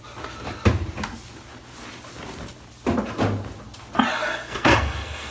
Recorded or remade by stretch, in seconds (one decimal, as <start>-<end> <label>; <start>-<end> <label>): 0.0-4.1 recorded; 4.1-5.3 remade